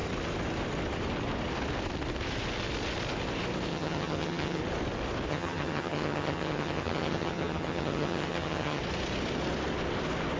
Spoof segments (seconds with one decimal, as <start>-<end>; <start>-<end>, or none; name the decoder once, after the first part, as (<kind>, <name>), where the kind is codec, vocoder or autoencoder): 3.7-4.6 (vocoder, HiFi-GAN); 5.3-8.8